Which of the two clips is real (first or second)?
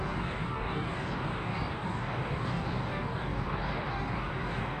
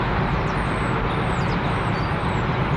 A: second